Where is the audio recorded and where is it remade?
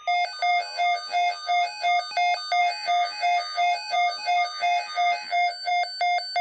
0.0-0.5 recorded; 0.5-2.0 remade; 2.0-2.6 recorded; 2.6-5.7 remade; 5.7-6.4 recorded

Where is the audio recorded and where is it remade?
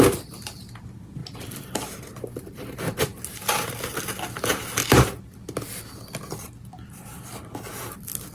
0.0-1.2 recorded; 1.2-1.8 remade; 1.8-8.3 recorded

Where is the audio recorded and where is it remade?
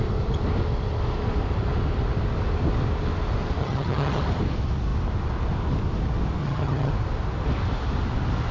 0.0-3.6 recorded; 3.6-4.2 remade; 4.2-6.4 recorded; 6.4-6.9 remade; 6.9-8.5 recorded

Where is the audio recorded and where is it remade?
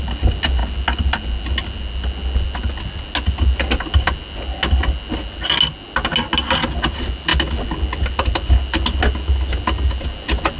0.0-10.6 recorded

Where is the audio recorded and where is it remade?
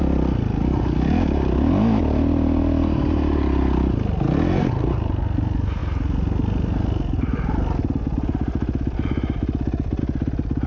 0.0-10.7 recorded